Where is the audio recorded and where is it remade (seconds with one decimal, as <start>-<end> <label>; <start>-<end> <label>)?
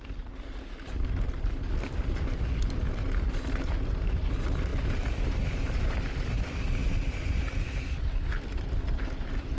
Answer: 0.0-9.6 recorded